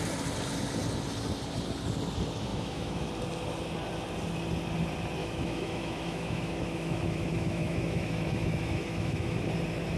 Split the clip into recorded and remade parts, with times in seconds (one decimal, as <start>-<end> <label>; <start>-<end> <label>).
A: 0.0-2.5 recorded; 2.5-3.1 remade; 3.1-5.2 recorded; 5.2-9.5 remade; 9.5-10.0 recorded